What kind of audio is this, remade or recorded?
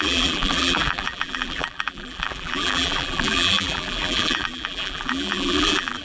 remade